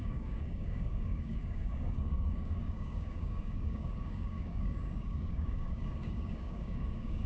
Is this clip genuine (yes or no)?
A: no